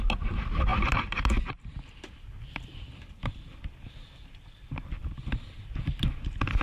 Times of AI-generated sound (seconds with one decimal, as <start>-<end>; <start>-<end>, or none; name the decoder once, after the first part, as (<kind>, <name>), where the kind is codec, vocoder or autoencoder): none